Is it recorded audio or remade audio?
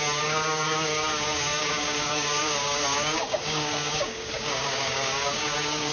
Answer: remade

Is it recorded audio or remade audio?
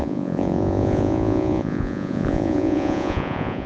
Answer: remade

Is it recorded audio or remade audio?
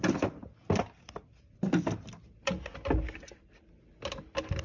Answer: recorded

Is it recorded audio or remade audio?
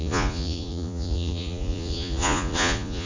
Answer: remade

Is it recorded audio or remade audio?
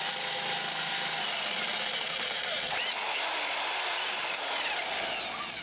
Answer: recorded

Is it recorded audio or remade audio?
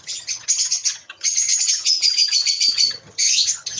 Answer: remade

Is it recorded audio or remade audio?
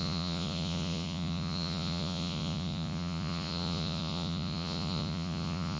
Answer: remade